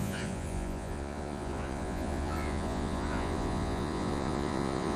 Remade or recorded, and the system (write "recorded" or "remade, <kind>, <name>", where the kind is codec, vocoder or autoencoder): remade, vocoder, Vocos